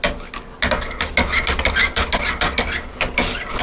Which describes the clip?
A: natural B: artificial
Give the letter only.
A